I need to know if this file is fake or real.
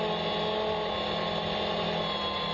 real